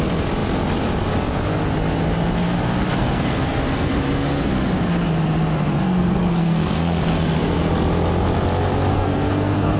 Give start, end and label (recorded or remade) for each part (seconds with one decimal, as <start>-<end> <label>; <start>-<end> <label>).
0.0-2.9 recorded; 2.9-3.9 remade; 3.9-5.8 recorded; 5.8-7.7 remade; 7.7-8.9 recorded; 8.9-9.8 remade